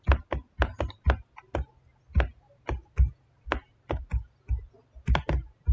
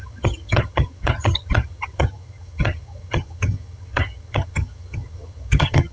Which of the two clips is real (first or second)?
first